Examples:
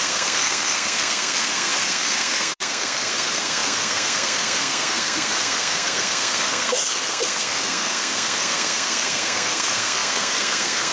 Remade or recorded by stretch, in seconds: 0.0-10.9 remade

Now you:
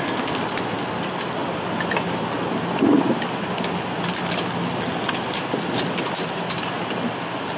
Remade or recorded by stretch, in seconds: 0.0-7.6 recorded

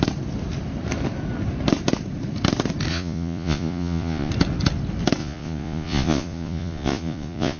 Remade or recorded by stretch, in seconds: 0.0-2.9 recorded; 2.9-4.3 remade; 4.3-5.2 recorded; 5.2-7.6 remade

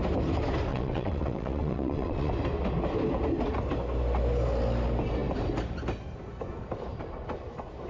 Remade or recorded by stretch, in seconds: 0.0-0.7 recorded; 0.7-2.3 remade; 2.3-7.9 recorded

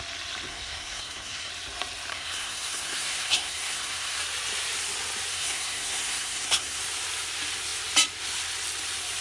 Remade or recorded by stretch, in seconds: 0.0-0.5 recorded; 0.5-1.5 remade; 1.5-2.1 recorded; 2.1-4.2 remade; 4.2-5.3 recorded; 5.3-6.8 remade; 6.8-9.2 recorded

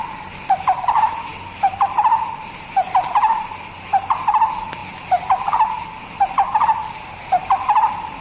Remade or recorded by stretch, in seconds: 0.0-8.2 recorded